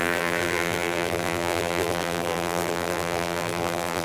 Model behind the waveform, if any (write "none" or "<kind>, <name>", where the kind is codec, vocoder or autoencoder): vocoder, BigVGAN v2